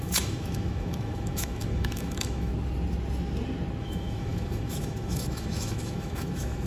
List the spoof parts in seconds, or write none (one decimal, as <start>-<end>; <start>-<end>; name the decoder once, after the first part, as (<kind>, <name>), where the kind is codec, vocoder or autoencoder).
0.0-2.5 (autoencoder, DAC-VAE); 3.8-6.7